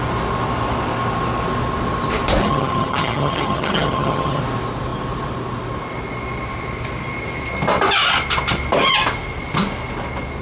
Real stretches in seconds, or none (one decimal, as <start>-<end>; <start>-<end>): 0.0-2.4; 4.4-10.4